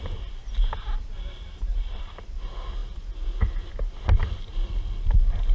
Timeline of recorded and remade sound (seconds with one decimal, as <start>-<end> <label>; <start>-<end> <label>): 0.0-5.5 recorded